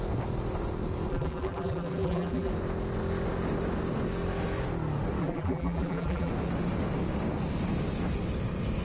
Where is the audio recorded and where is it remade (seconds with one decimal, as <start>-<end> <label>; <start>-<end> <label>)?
0.0-1.1 recorded; 1.1-2.5 remade; 2.5-5.2 recorded; 5.2-6.3 remade; 6.3-8.8 recorded

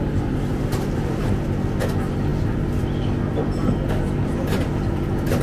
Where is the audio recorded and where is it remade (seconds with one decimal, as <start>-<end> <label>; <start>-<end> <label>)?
0.0-0.5 recorded; 0.5-1.3 remade; 1.3-5.4 recorded

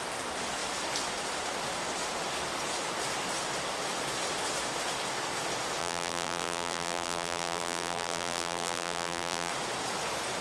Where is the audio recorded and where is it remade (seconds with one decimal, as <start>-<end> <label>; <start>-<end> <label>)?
0.0-5.8 recorded; 5.8-9.5 remade; 9.5-10.4 recorded

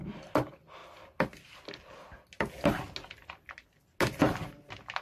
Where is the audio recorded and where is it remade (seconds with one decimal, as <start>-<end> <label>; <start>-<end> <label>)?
0.0-5.0 recorded

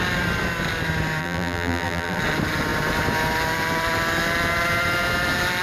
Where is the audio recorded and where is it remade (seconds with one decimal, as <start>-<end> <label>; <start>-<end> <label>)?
0.0-1.2 recorded; 1.2-2.2 remade; 2.2-5.6 recorded

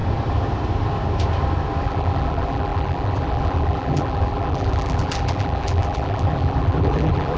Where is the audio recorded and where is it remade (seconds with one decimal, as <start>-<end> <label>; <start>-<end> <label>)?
0.0-1.8 recorded; 1.8-7.4 remade

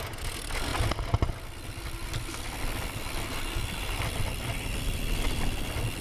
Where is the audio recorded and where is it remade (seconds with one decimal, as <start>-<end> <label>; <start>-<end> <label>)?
0.0-6.0 recorded

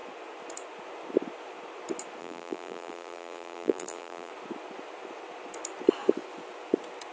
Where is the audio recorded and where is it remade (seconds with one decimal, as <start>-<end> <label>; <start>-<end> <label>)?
0.0-2.2 recorded; 2.2-4.3 remade; 4.3-7.1 recorded